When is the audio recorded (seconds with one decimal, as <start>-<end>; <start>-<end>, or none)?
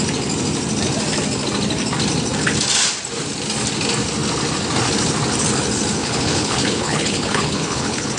0.0-6.0